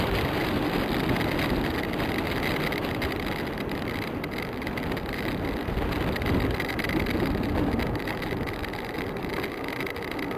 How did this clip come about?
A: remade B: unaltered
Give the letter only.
B